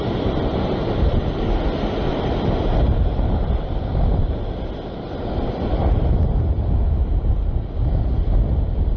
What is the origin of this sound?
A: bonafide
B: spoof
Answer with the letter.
A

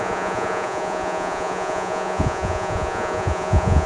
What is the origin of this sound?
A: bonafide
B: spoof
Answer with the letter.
B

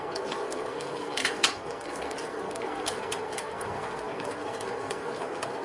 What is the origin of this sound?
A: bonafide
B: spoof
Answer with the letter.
B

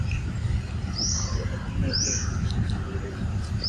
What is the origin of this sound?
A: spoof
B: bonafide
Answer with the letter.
B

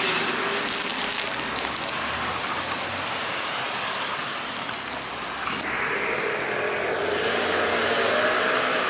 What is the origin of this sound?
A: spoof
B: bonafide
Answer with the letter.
B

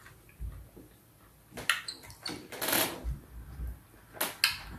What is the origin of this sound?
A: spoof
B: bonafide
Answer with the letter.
B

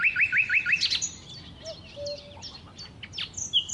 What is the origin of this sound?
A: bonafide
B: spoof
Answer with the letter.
A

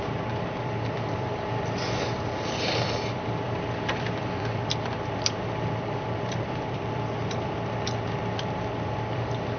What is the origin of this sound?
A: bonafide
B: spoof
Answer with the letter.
B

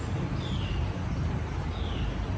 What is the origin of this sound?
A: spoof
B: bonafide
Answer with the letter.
B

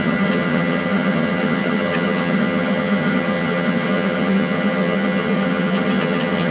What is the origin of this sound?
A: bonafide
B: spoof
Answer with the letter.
B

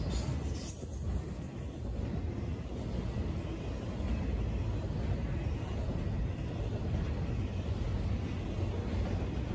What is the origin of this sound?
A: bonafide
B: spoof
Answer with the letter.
A